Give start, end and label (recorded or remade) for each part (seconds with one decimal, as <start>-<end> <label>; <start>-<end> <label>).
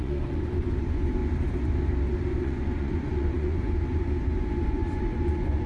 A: 0.0-1.2 remade; 1.2-2.3 recorded; 2.3-5.7 remade